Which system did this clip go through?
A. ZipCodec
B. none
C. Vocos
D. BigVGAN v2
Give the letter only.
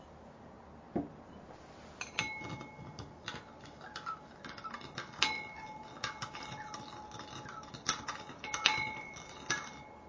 B